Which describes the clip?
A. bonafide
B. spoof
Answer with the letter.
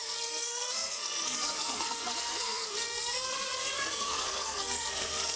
B